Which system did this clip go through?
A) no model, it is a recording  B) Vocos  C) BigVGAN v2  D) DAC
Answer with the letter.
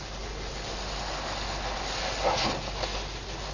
A